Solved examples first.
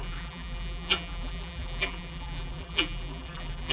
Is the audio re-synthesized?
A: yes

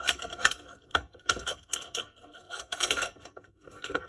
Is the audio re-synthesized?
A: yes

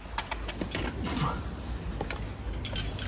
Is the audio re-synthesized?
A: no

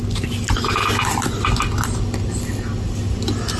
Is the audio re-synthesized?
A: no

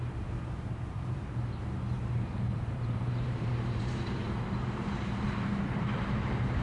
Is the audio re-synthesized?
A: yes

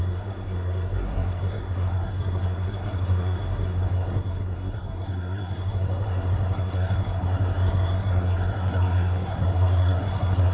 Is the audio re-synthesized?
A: yes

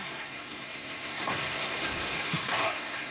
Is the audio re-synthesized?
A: yes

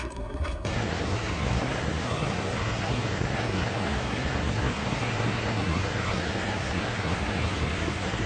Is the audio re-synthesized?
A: yes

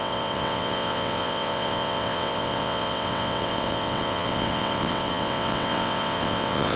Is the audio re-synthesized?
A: yes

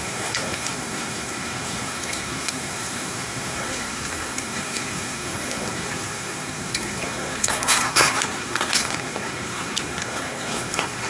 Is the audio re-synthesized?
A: yes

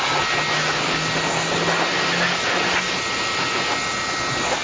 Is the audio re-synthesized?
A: no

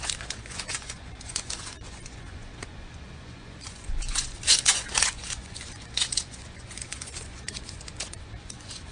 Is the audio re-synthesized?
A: yes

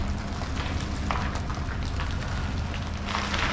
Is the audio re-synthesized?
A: no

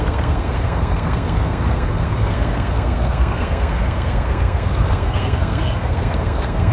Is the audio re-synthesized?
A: yes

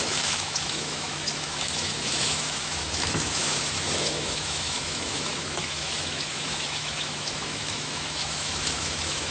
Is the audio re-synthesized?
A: yes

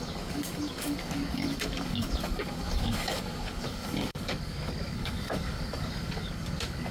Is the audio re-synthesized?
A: yes